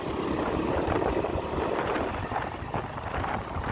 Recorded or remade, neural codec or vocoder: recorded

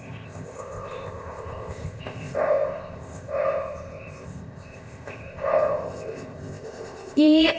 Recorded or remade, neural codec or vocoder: remade, codec, ZipCodec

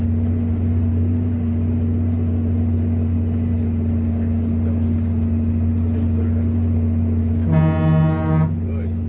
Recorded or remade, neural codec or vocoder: recorded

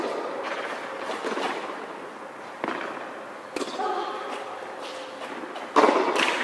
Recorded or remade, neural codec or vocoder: recorded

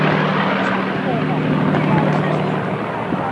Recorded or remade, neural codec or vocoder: recorded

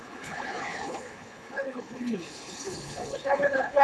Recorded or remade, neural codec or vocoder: remade, codec, HILCodec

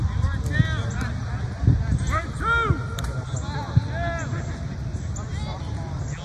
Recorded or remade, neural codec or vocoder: recorded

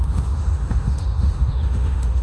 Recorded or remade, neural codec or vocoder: remade, autoencoder, DAC-VAE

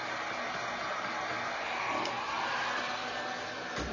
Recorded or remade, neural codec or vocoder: recorded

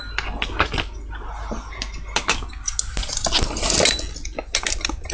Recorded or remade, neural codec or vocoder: recorded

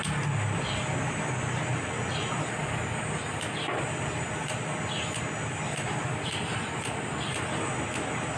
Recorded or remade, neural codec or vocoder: recorded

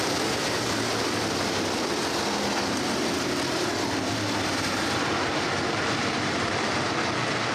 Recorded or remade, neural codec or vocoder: remade, vocoder, BigVGAN v2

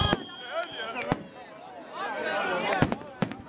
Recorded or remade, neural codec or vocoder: recorded